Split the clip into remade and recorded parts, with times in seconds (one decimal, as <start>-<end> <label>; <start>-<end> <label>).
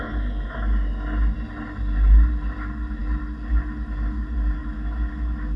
0.0-4.6 recorded; 4.6-5.6 remade